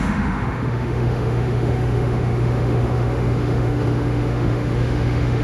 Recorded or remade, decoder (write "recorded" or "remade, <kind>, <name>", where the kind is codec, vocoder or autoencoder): remade, autoencoder, DAC-VAE